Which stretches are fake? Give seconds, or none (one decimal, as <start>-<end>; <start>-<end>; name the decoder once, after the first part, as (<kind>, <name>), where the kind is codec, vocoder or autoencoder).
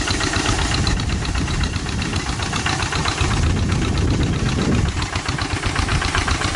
0.0-2.1 (vocoder, BigVGAN v2); 5.5-6.6